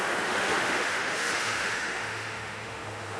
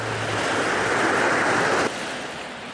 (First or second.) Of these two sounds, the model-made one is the first